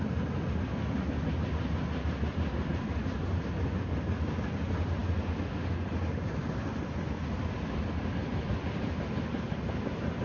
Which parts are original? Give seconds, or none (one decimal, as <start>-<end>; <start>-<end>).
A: 0.0-10.2